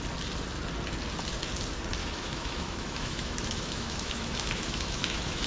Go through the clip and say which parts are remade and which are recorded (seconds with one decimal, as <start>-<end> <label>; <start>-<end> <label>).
0.0-2.0 recorded; 2.0-5.5 remade